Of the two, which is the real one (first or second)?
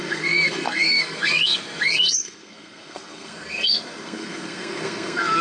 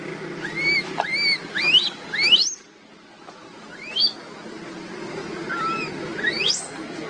second